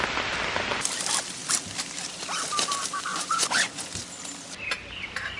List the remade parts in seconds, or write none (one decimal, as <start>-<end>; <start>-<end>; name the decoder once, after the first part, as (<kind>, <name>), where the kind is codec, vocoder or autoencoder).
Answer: 3.1-3.9 (vocoder, Vocos)

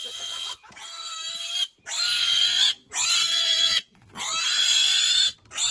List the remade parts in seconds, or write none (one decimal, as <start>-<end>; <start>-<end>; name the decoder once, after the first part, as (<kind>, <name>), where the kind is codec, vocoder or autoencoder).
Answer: 0.0-0.7 (vocoder, Vocos); 2.2-2.9; 3.3-4.3

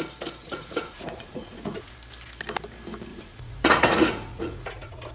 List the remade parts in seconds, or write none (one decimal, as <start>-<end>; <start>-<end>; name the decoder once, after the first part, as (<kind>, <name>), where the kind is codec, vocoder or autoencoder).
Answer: 0.4-1.9 (vocoder, Vocos); 3.1-5.1

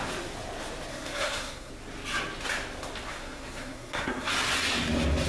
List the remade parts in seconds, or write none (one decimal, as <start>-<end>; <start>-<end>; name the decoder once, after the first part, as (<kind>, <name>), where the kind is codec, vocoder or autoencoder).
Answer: 0.9-1.7 (codec, SNAC); 3.1-4.3

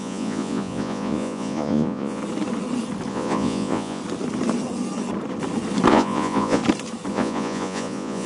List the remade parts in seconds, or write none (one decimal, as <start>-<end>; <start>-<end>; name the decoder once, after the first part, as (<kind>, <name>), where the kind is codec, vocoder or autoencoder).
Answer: 0.0-2.2 (vocoder, Vocos); 3.1-4.0; 5.9-6.6; 7.1-8.3